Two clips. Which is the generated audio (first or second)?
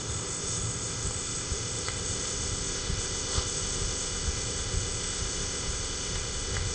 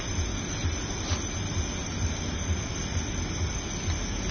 first